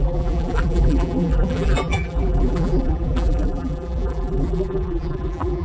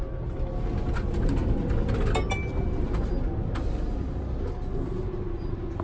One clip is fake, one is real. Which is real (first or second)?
second